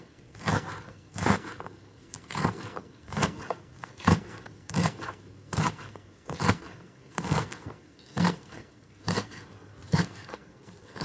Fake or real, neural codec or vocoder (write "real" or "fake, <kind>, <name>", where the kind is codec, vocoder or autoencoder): fake, codec, SNAC